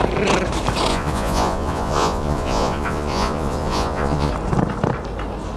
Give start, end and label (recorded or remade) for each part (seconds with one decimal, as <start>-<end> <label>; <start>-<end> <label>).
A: 0.0-0.9 recorded; 0.9-4.3 remade; 4.3-5.6 recorded